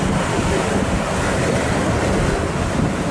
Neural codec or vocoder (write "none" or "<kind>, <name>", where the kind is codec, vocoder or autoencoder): none